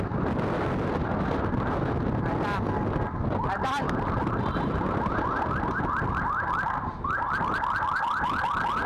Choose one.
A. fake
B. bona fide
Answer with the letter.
B